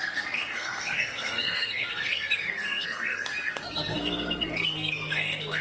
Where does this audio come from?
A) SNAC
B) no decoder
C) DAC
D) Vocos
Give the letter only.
A